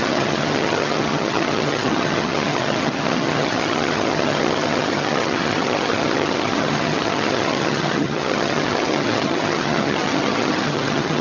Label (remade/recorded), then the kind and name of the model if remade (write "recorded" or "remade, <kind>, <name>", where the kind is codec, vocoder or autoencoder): remade, vocoder, HiFi-GAN